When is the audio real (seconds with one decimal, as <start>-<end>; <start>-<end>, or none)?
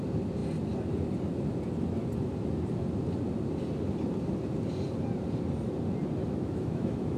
0.0-6.2